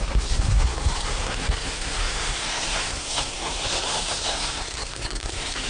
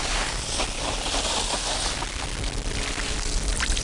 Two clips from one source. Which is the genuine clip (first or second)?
second